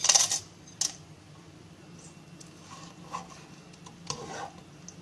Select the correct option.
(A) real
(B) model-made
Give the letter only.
A